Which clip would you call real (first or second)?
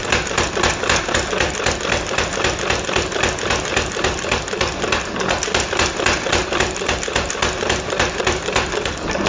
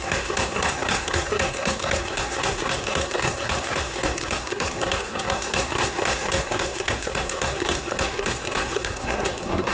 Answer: first